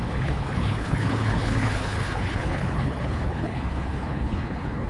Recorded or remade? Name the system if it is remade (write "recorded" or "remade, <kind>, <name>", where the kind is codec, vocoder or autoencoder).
remade, codec, HILCodec